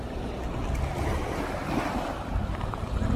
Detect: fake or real real